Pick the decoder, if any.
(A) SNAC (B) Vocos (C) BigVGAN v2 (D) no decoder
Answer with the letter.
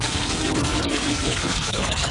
A